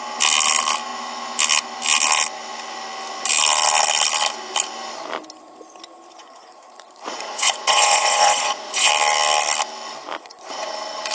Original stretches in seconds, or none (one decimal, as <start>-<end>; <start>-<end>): 0.0-6.2; 8.9-10.2; 10.7-11.1